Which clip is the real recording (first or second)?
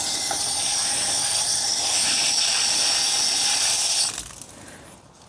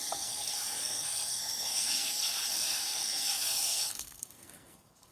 first